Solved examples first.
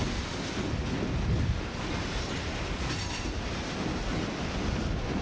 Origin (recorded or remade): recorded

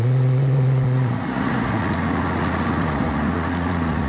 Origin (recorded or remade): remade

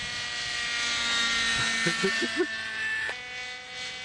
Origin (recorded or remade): recorded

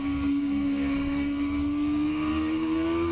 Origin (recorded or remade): remade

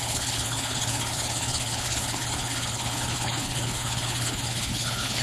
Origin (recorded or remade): remade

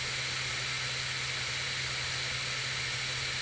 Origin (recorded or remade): recorded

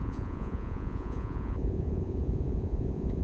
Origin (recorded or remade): remade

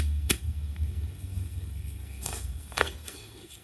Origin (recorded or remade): remade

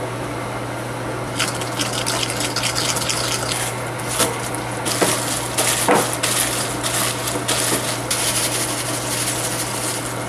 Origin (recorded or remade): recorded